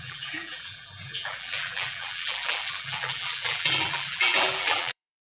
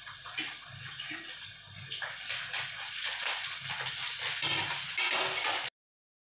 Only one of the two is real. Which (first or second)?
second